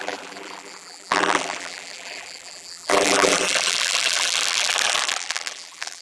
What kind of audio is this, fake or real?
fake